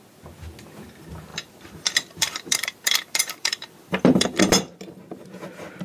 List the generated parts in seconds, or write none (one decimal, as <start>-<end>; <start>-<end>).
1.3-4.8